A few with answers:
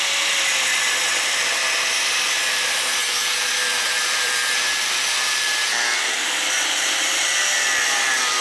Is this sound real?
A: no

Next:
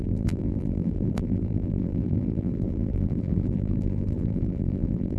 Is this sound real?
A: no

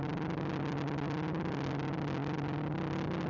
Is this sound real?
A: no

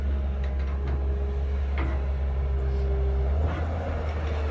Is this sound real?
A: yes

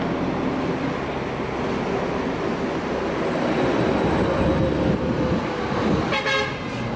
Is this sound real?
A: yes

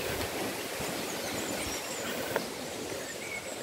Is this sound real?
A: yes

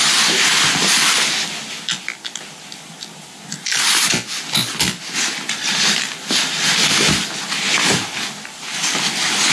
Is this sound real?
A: yes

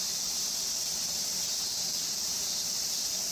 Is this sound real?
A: no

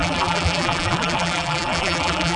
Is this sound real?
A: no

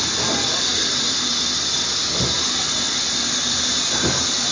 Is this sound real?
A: yes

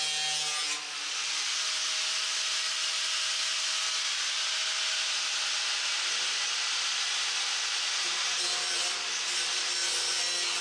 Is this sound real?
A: yes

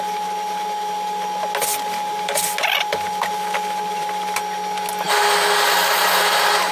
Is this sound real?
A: yes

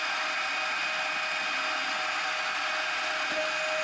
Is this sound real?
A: yes